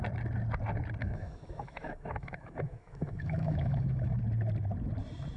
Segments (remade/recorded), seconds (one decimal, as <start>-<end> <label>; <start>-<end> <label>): 0.0-1.0 recorded; 1.0-4.2 remade; 4.2-5.4 recorded